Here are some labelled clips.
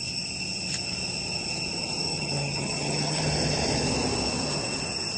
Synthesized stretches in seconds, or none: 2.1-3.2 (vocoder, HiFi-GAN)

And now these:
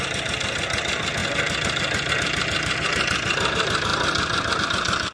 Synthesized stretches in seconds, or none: none

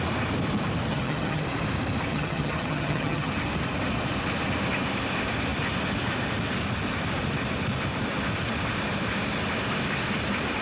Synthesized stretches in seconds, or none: 0.9-1.4 (vocoder, HiFi-GAN); 2.1-3.3

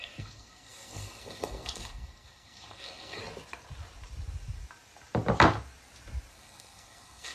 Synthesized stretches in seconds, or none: 0.0-3.2 (codec, SNAC); 6.3-7.3

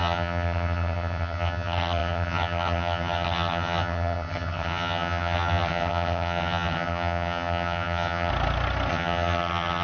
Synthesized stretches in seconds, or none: 0.0-8.3 (vocoder, HiFi-GAN); 8.9-9.8

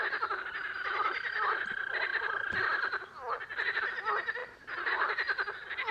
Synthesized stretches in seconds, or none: none